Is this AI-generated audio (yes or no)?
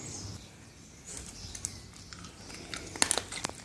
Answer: no